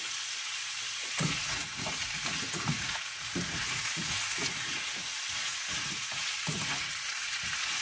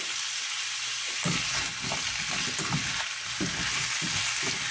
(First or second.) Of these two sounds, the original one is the second